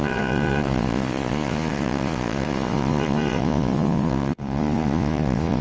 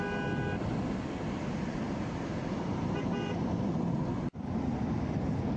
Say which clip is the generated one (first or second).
first